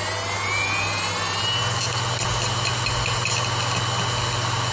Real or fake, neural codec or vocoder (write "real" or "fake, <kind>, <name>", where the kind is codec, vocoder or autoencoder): real